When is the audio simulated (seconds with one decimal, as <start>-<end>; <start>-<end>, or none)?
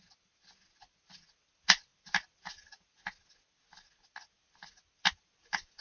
none